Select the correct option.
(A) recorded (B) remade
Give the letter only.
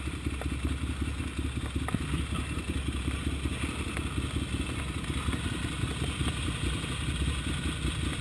A